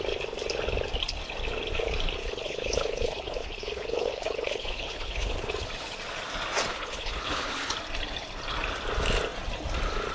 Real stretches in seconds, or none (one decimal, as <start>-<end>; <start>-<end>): 0.0-2.2; 5.5-6.7; 7.7-10.1